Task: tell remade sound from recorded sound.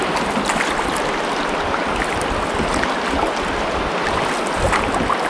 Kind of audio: recorded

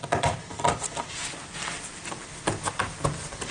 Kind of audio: recorded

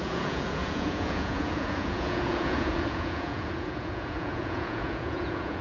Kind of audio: remade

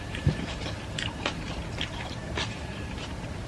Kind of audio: remade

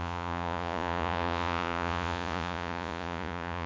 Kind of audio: remade